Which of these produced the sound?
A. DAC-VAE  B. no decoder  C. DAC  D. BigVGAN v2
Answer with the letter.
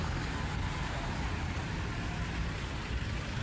B